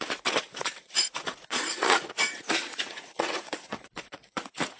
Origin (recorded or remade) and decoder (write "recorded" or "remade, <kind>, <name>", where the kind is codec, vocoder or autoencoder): remade, vocoder, Vocos